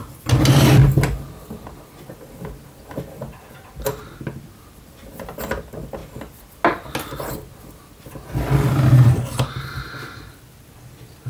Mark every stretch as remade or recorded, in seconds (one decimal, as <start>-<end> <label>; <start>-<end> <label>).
0.0-11.3 recorded